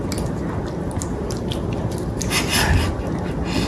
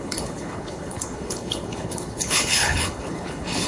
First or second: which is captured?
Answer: first